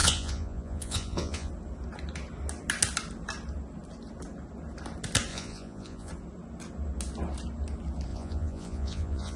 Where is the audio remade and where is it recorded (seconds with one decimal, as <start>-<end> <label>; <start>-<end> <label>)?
0.0-1.5 remade; 1.5-5.3 recorded; 5.3-6.1 remade; 6.1-8.1 recorded; 8.1-9.4 remade

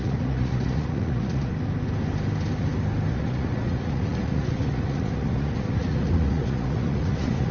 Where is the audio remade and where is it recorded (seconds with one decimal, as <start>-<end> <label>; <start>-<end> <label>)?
0.0-1.5 remade; 1.5-3.1 recorded; 3.1-7.5 remade

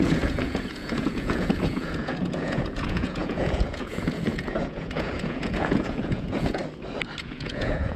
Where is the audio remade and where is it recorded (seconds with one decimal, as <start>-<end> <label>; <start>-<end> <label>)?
0.0-6.6 remade; 6.6-7.2 recorded; 7.2-8.0 remade

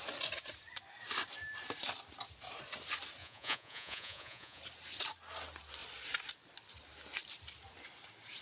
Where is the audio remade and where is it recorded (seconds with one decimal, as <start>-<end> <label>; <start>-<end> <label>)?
0.0-3.2 recorded; 3.2-4.6 remade; 4.6-8.4 recorded